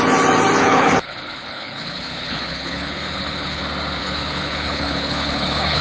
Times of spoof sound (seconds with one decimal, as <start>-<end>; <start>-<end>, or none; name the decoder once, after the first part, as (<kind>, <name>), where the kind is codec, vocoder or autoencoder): 0.6-3.6 (codec, HILCodec); 4.0-5.8